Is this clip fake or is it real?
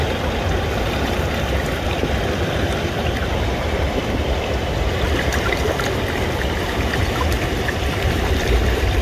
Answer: fake